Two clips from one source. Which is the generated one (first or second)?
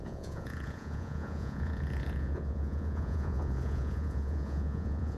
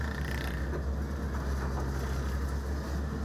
first